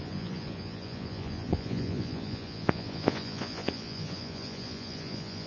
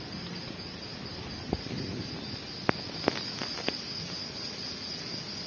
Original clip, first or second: second